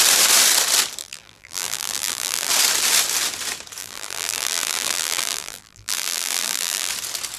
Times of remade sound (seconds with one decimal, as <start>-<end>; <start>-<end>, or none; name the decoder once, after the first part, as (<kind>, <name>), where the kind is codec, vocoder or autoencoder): 1.0-2.5 (vocoder, BigVGAN v2); 3.8-6.9